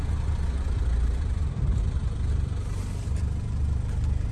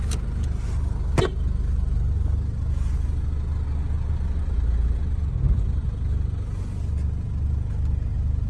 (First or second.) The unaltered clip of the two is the second